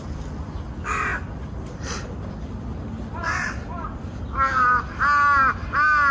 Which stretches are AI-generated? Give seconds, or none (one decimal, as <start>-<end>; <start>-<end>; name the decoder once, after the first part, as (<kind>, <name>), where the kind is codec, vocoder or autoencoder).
none

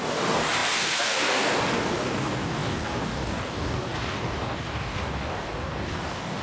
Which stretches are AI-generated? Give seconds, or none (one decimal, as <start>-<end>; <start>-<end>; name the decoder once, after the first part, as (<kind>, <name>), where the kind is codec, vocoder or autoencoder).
0.0-6.4 (codec, DAC)

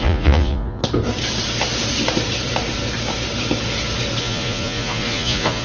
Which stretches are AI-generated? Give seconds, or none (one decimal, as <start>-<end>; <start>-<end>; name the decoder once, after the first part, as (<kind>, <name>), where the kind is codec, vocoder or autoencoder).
0.0-0.8 (vocoder, Vocos); 4.2-5.6